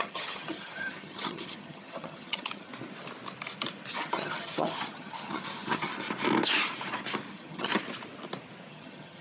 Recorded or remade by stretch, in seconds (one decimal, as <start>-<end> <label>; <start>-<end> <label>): 0.0-2.7 remade; 2.7-3.9 recorded; 3.9-5.9 remade; 5.9-7.3 recorded; 7.3-7.7 remade; 7.7-8.7 recorded; 8.7-9.2 remade